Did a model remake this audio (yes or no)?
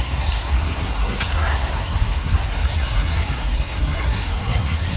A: yes